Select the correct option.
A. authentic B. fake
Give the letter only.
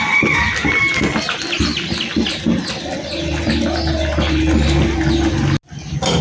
A